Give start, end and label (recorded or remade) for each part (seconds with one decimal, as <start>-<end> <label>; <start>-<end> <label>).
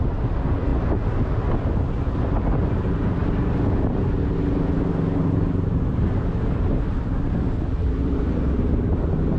0.0-0.7 recorded; 0.7-1.5 remade; 1.5-7.8 recorded; 7.8-8.4 remade; 8.4-9.4 recorded